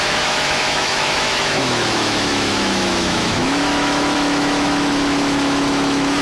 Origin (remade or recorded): remade